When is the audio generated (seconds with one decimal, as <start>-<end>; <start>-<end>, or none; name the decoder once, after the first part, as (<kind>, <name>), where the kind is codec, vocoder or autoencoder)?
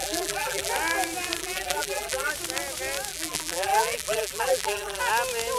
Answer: 0.0-0.7 (vocoder, BigVGAN v2); 1.4-2.3; 3.1-5.0